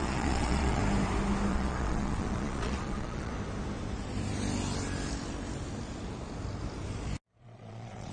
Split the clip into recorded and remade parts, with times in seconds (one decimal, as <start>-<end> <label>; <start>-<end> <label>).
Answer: 0.0-0.8 remade; 0.8-1.5 recorded; 1.5-3.3 remade; 3.3-7.4 recorded; 7.4-8.1 remade